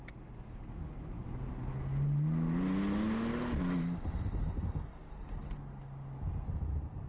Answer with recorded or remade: recorded